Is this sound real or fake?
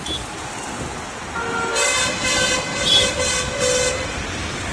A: real